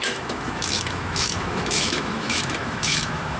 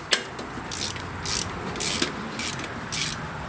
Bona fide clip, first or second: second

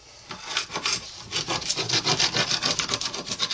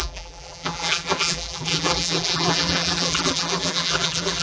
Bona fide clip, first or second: first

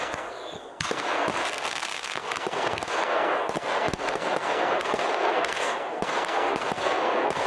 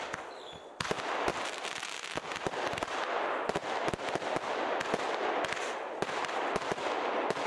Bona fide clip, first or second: second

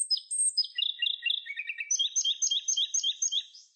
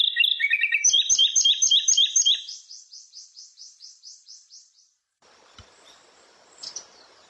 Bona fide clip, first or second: first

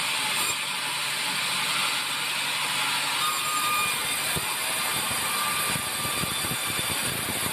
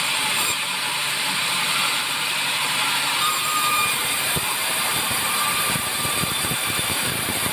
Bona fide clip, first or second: first